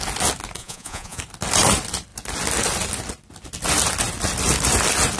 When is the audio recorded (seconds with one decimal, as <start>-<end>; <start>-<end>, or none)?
0.0-0.6; 1.2-5.2